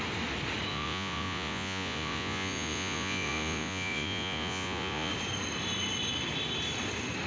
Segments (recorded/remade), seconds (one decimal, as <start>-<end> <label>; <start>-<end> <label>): 0.0-0.7 recorded; 0.7-5.1 remade; 5.1-7.3 recorded